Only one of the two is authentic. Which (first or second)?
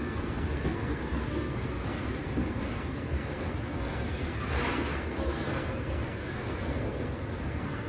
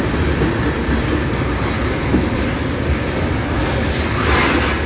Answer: second